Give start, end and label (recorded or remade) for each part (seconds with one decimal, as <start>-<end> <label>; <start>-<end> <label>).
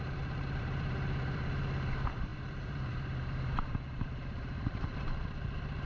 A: 0.0-5.9 remade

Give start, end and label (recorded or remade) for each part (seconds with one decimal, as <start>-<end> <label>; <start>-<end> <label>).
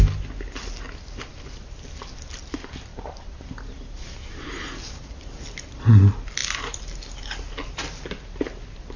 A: 0.0-2.9 recorded; 2.9-4.4 remade; 4.4-9.0 recorded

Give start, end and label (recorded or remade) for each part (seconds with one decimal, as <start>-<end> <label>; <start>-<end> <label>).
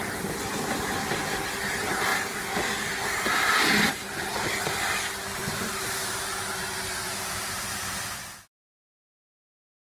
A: 0.0-2.1 recorded; 2.1-5.0 remade; 5.0-5.4 recorded; 5.4-9.2 remade; 9.2-9.8 recorded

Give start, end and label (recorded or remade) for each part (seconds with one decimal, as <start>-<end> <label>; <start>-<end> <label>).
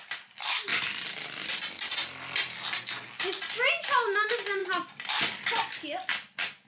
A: 0.0-0.7 recorded; 0.7-1.6 remade; 1.6-2.0 recorded; 2.0-2.7 remade; 2.7-4.6 recorded; 4.6-5.1 remade; 5.1-6.7 recorded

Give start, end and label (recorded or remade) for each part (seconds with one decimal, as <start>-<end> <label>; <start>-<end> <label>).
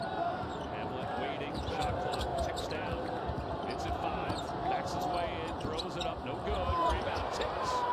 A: 0.0-0.5 remade; 0.5-1.7 recorded; 1.7-4.6 remade; 4.6-7.0 recorded; 7.0-7.9 remade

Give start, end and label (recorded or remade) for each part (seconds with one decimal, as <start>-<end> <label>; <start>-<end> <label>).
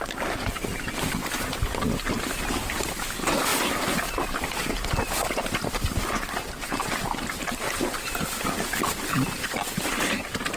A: 0.0-10.6 recorded